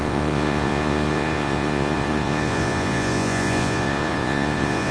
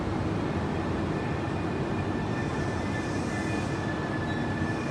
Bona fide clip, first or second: second